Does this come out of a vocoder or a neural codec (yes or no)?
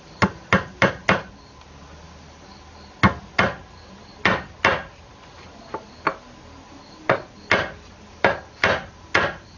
no